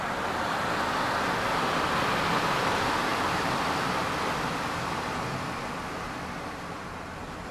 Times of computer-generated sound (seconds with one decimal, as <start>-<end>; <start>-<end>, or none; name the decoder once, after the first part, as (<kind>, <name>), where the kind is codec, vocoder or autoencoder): none